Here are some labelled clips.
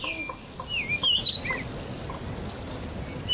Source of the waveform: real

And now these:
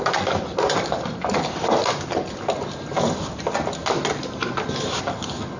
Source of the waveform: real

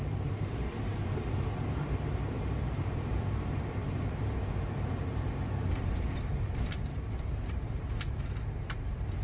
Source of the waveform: fake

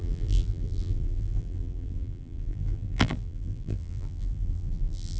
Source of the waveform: fake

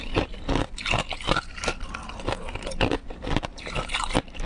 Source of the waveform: real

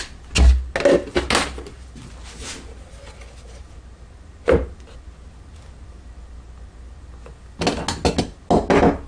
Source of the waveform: real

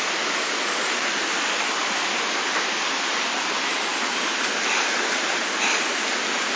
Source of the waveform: real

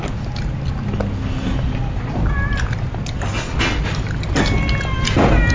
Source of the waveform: real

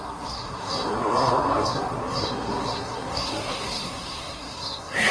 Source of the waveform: fake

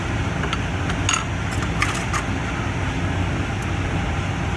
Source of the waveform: real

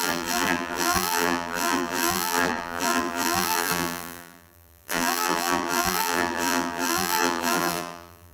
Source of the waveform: fake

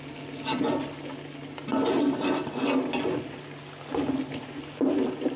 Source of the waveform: real